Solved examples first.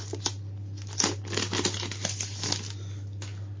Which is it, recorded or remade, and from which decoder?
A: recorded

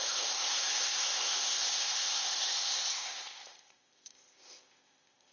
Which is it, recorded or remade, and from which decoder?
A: remade, codec, ZipCodec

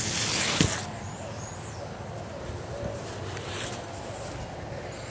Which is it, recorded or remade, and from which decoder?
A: recorded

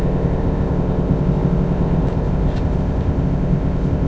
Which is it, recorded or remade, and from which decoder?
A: remade, codec, ZipCodec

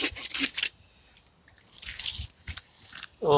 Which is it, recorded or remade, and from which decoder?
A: recorded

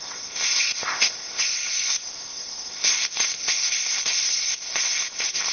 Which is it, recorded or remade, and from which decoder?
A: remade, codec, ZipCodec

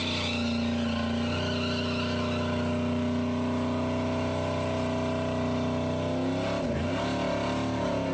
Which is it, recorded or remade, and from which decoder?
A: recorded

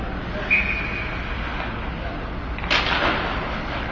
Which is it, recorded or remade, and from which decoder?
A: recorded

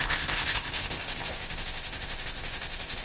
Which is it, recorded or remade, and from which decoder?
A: remade, codec, ZipCodec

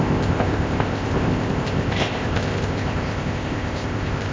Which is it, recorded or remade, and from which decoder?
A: remade, codec, ZipCodec